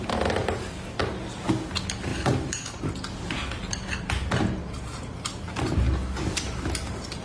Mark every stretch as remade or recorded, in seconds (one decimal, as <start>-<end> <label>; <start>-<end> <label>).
0.0-7.2 recorded